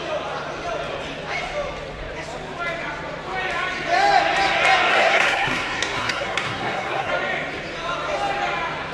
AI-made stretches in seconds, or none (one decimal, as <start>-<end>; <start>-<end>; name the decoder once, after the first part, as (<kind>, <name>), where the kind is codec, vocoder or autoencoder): 4.9-7.1 (codec, SNAC)

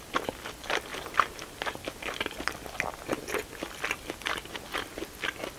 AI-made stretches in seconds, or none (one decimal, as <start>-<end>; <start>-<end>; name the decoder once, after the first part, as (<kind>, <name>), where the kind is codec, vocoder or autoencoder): none

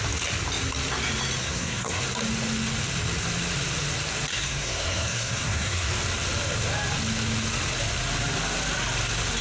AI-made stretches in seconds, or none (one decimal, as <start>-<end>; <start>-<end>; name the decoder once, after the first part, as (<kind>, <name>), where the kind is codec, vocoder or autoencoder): 1.4-2.0 (codec, SNAC); 4.3-5.9

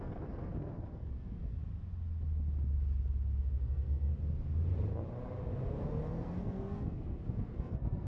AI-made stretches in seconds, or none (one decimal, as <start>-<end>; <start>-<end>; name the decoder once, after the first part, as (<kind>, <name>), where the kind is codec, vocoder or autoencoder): 0.0-1.6 (codec, SNAC); 3.4-4.1; 6.1-8.1

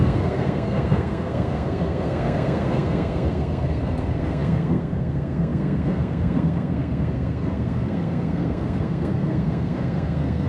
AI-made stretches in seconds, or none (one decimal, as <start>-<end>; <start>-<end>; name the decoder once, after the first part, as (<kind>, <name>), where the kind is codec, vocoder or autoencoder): 0.0-10.5 (codec, SNAC)

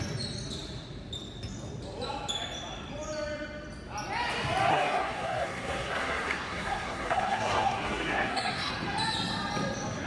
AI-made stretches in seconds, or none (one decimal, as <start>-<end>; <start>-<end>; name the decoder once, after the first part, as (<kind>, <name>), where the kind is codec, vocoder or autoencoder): 4.7-8.7 (codec, SNAC)